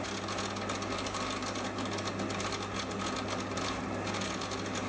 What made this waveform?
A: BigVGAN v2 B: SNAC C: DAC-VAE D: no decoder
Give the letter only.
D